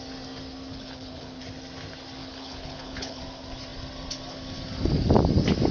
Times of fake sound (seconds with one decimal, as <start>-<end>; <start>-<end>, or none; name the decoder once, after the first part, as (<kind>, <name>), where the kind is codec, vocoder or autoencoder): 0.7-1.4 (codec, HILCodec); 2.2-3.2